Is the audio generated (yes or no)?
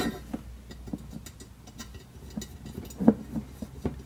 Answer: no